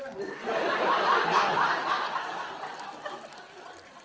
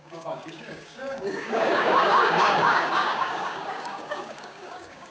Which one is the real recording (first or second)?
first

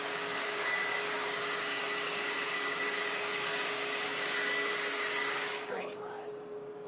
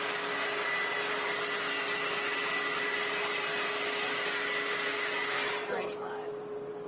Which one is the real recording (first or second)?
second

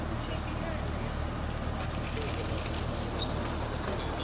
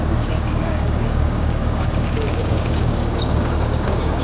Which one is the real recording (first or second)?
first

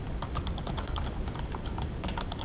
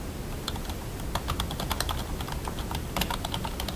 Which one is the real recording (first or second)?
second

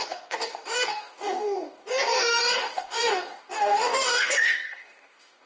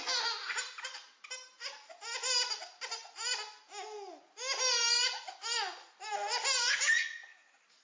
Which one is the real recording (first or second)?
second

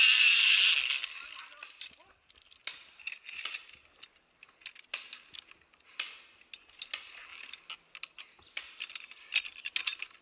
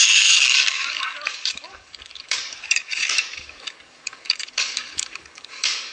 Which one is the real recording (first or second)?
first